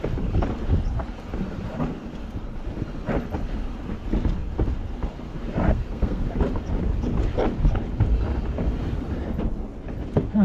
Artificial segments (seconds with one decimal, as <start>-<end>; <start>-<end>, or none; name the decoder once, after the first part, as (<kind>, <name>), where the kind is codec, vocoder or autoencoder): 5.7-6.2 (codec, SNAC)